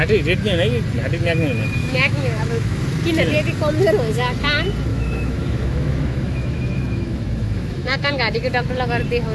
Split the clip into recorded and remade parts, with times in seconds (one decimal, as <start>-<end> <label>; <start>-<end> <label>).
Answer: 0.0-1.8 recorded; 1.8-2.8 remade; 2.8-4.9 recorded; 4.9-8.1 remade; 8.1-9.3 recorded